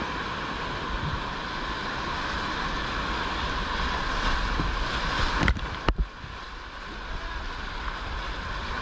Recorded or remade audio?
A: recorded